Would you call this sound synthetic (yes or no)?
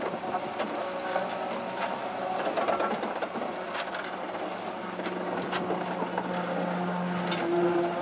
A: no